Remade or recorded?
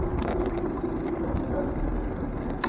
recorded